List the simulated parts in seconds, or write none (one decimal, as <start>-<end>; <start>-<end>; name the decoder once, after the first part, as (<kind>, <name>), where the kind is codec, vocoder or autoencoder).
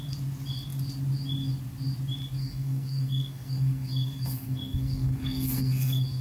2.4-6.2 (codec, SNAC)